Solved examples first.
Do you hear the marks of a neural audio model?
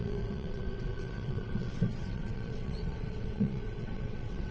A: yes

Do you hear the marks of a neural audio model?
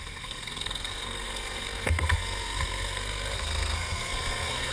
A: yes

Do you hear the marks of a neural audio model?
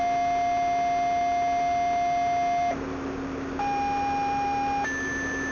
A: no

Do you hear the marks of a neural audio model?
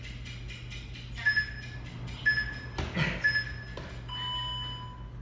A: no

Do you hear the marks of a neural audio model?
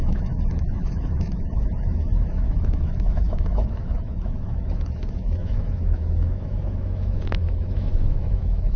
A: yes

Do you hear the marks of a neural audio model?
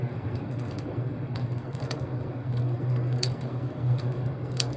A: yes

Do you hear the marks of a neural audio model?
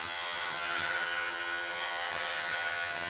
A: yes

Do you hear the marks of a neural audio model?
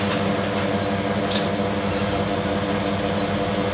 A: no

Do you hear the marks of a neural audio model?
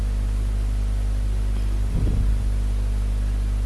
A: no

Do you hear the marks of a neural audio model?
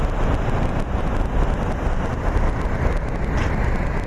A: no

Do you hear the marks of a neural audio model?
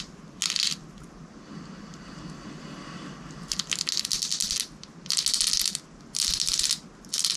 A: no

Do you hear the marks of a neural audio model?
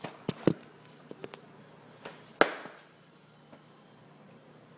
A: no